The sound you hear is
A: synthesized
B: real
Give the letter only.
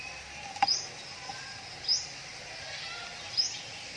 B